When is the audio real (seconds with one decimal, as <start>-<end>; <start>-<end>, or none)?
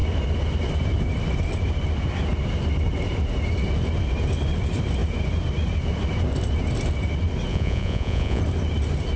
0.0-7.5; 8.4-9.2